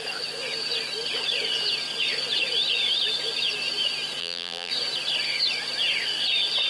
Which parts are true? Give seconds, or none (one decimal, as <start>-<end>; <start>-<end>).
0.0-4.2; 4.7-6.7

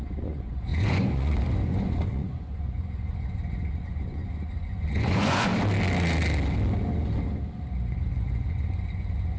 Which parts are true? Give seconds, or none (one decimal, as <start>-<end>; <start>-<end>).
5.5-7.9

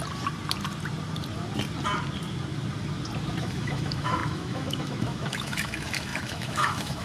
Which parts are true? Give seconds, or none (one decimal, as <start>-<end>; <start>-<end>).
0.0-3.4

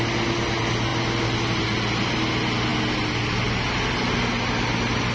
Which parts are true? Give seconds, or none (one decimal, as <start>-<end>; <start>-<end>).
0.0-5.1